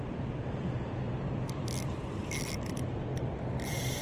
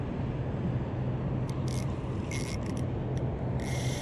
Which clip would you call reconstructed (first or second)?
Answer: first